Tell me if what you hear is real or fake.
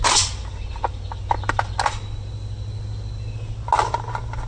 real